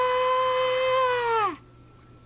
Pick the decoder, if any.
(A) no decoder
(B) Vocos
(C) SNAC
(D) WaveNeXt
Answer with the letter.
A